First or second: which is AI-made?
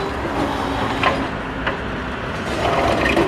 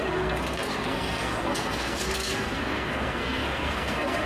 second